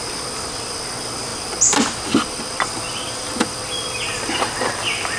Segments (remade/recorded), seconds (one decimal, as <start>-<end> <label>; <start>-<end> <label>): 0.0-5.2 recorded

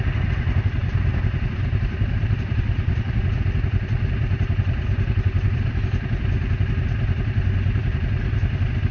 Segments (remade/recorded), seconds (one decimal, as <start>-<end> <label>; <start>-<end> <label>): 0.0-0.8 recorded; 0.8-3.2 remade; 3.2-8.9 recorded

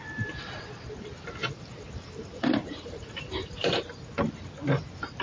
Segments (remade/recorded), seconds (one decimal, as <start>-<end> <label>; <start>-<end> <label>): 0.0-1.4 recorded; 1.4-3.8 remade; 3.8-5.2 recorded

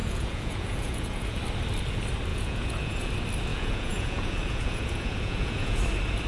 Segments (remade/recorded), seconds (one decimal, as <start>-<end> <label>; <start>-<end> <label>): 0.0-1.4 remade; 1.4-2.3 recorded; 2.3-3.1 remade; 3.1-3.5 recorded; 3.5-5.8 remade; 5.8-6.3 recorded

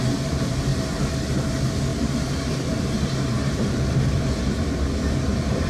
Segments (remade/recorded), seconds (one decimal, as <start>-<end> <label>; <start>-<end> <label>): 0.0-1.9 recorded; 1.9-4.8 remade; 4.8-5.7 recorded

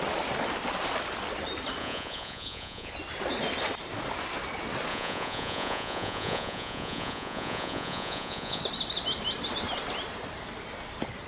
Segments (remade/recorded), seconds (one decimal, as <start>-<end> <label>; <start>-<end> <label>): 0.0-1.8 recorded; 1.8-2.9 remade; 2.9-4.9 recorded; 4.9-8.6 remade; 8.6-11.3 recorded